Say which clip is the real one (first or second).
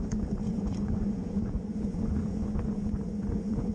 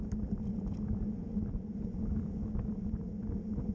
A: second